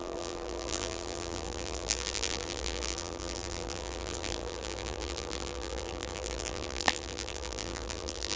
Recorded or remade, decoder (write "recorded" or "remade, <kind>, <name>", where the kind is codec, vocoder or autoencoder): remade, vocoder, BigVGAN v2